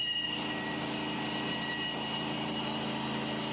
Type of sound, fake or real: real